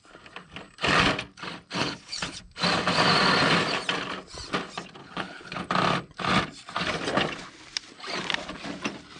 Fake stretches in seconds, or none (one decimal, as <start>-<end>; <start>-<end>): 1.8-2.4; 5.0-5.6